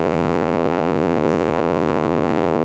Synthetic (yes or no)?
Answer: yes